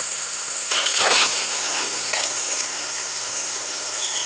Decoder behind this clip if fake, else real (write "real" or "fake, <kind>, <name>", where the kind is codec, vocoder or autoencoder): fake, codec, SNAC